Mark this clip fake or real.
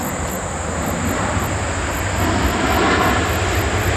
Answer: real